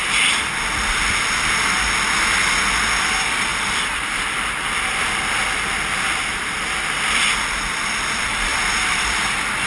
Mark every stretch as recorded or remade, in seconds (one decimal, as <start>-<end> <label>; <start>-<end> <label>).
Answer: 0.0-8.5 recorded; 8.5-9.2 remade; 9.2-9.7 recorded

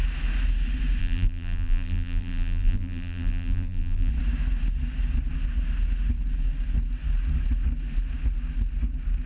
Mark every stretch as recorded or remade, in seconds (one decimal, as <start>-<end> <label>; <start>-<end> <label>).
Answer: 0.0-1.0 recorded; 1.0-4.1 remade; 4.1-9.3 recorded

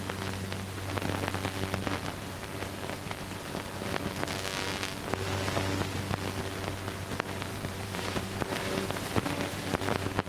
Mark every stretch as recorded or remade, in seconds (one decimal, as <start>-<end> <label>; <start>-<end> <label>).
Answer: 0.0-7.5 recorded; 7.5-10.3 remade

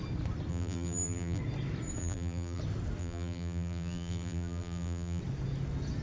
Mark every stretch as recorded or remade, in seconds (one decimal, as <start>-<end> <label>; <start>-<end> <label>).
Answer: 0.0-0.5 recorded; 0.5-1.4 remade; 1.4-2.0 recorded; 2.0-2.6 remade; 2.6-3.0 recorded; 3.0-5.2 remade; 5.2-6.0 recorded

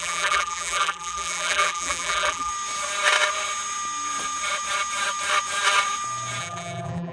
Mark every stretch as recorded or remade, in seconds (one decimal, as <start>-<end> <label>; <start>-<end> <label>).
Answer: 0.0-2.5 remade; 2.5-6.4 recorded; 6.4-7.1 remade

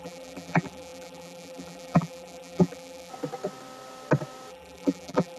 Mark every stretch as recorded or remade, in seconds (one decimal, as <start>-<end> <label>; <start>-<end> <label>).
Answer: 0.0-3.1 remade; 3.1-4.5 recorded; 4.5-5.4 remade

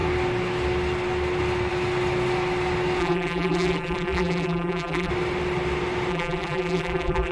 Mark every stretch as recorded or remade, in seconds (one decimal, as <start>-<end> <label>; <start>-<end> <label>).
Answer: 0.0-3.0 recorded; 3.0-5.1 remade; 5.1-6.1 recorded; 6.1-7.3 remade